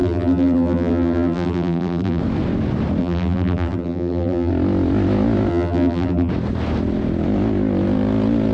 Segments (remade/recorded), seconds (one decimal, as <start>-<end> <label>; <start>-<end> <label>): 0.0-2.2 remade; 2.2-3.0 recorded; 3.0-4.5 remade; 4.5-5.5 recorded; 5.5-6.3 remade; 6.3-8.5 recorded